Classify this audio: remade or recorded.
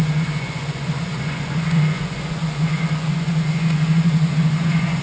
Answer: remade